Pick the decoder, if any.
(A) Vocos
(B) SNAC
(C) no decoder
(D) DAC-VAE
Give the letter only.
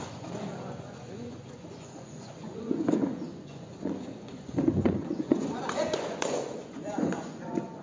A